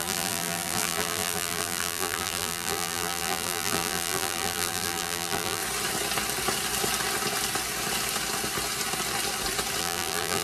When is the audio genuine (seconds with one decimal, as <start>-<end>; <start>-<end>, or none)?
5.6-9.8